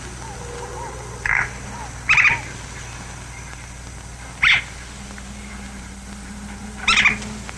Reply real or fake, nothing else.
real